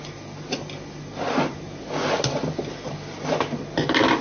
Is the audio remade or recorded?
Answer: recorded